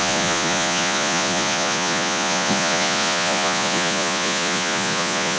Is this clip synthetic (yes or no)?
yes